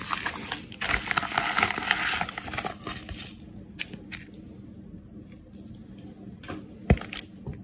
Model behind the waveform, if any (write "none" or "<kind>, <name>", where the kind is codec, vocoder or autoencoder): none